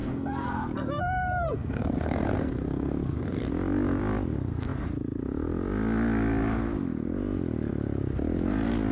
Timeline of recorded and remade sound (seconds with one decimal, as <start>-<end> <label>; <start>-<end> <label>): 0.0-3.5 remade; 3.5-8.9 recorded